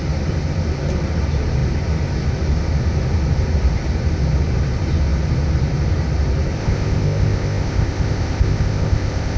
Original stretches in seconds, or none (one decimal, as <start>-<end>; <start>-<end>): 0.0-6.6

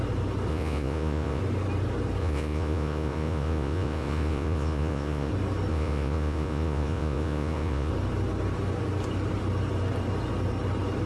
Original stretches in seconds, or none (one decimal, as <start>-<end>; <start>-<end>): 0.0-0.5; 1.4-2.2; 5.3-5.7; 7.9-11.1

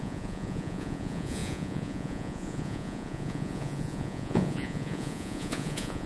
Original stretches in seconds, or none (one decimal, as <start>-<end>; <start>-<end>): none

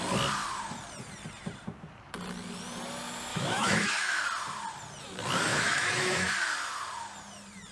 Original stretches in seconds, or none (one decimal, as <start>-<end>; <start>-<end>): 0.0-3.3; 4.2-5.5; 6.3-7.7

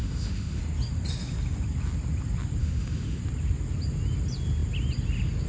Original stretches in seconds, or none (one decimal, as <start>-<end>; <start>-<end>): 0.6-2.6; 3.2-5.5

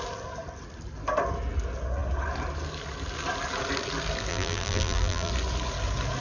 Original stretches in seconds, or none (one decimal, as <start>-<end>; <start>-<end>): 0.0-4.3; 5.3-6.2

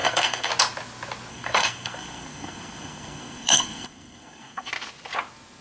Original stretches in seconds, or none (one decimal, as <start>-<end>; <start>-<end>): 0.5-1.3; 4.7-5.6

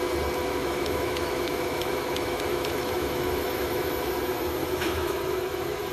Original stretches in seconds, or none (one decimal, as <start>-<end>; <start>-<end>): 0.0-0.4; 3.9-4.6